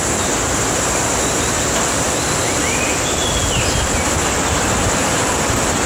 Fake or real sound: real